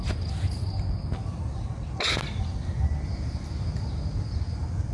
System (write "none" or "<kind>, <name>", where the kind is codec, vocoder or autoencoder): none